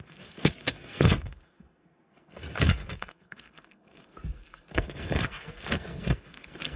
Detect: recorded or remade remade